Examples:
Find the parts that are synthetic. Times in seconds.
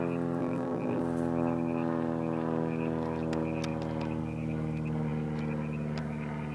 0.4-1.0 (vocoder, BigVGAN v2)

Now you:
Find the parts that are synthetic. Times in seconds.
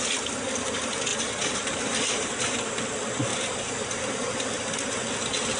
3.3-4.5 (vocoder, BigVGAN v2)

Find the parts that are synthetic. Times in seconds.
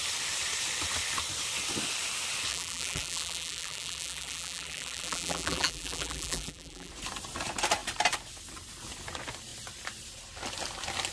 2.5-6.9 (vocoder, BigVGAN v2)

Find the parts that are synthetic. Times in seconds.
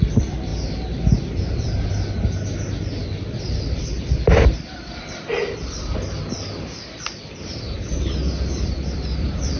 0.0-0.5 (vocoder, BigVGAN v2); 3.4-9.6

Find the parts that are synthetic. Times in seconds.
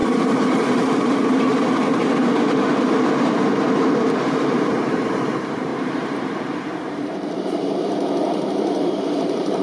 4.2-9.6 (vocoder, BigVGAN v2)